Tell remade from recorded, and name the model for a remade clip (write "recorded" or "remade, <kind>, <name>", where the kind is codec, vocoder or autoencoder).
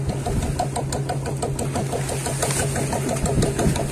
recorded